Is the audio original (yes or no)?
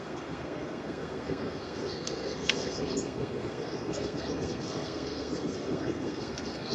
no